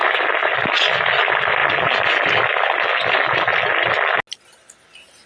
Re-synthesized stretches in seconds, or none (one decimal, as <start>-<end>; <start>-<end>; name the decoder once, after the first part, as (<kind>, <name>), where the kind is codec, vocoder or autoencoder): none